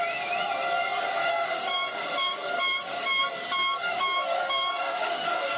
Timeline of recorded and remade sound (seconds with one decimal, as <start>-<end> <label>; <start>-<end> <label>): 0.0-1.2 recorded; 1.2-3.2 remade; 3.2-3.6 recorded; 3.6-5.6 remade